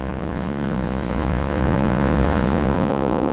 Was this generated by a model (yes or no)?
yes